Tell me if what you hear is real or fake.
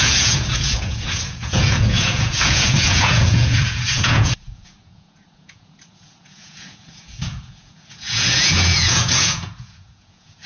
fake